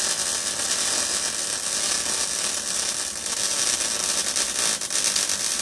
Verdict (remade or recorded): recorded